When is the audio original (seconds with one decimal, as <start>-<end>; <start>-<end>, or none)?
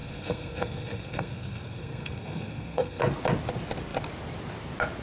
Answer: 3.0-5.0